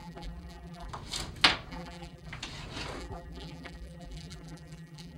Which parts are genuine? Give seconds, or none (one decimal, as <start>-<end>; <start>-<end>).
0.9-1.7; 2.3-3.0